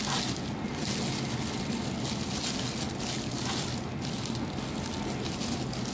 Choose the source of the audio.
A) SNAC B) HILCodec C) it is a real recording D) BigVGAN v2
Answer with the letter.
C